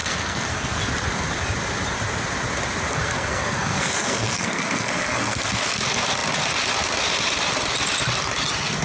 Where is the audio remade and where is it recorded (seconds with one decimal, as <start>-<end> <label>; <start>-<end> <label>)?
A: 0.0-0.8 remade; 0.8-2.9 recorded; 2.9-5.7 remade; 5.7-8.8 recorded